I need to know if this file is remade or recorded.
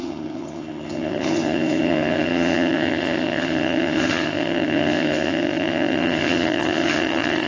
remade